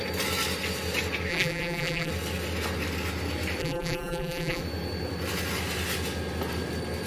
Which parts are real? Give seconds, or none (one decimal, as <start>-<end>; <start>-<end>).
0.0-1.3; 2.1-3.6; 4.6-7.1

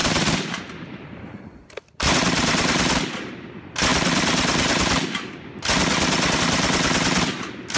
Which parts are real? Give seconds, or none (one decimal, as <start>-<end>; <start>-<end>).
2.1-7.8

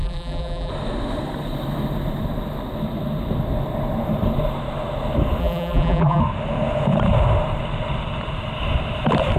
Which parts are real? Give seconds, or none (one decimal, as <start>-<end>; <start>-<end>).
0.7-5.4; 6.2-9.4

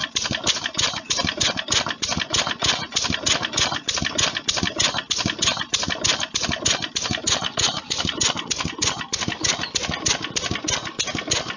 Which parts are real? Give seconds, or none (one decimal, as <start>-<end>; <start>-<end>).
0.0-11.6

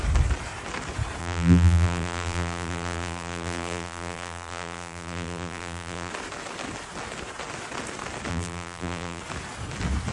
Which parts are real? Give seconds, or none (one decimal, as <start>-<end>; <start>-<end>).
0.0-1.2; 6.1-8.3; 9.2-10.1

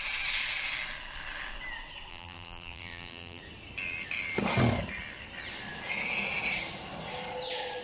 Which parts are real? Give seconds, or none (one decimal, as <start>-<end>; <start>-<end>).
0.0-2.1; 3.4-7.8

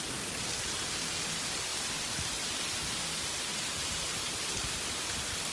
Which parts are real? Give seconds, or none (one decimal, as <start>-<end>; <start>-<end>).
0.0-3.5; 4.0-5.5